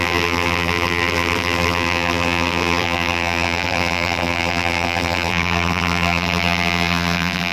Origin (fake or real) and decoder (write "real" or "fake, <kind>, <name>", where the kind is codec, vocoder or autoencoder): fake, vocoder, BigVGAN v2